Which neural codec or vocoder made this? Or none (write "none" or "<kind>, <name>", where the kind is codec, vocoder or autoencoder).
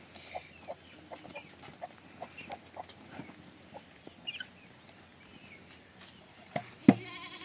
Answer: none